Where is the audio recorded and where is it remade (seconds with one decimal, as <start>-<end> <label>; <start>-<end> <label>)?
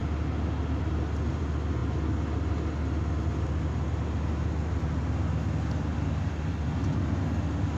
0.0-7.8 recorded